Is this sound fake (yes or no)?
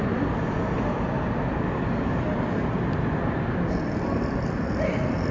no